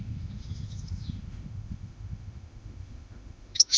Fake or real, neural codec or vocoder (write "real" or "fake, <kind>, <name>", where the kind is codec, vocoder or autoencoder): fake, autoencoder, DAC-VAE